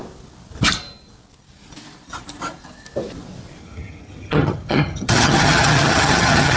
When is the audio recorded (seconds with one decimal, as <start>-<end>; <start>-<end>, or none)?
0.0-3.6